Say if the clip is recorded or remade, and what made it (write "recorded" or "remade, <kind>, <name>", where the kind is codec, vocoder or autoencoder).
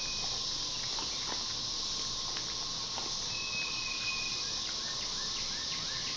recorded